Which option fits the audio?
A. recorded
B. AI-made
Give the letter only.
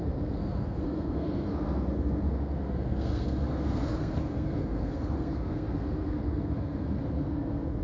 B